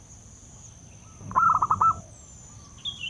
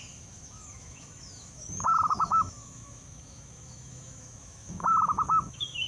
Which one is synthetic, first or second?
second